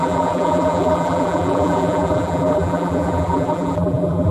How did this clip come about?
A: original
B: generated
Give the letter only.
B